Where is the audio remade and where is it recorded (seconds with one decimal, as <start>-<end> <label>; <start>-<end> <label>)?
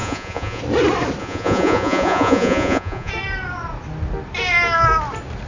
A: 0.0-0.6 remade; 0.6-1.2 recorded; 1.2-3.1 remade; 3.1-5.5 recorded